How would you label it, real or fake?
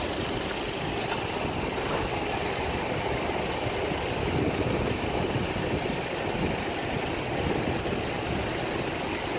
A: real